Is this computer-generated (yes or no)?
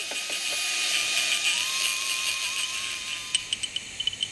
no